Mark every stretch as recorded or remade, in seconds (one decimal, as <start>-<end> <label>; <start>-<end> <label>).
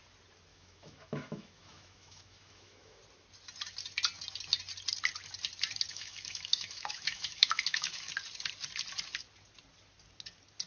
0.0-0.5 recorded; 0.5-3.0 remade; 3.0-5.9 recorded; 5.9-8.1 remade; 8.1-10.7 recorded